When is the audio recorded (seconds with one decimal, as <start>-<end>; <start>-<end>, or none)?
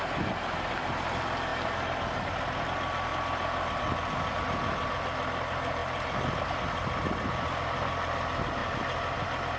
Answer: 0.0-9.6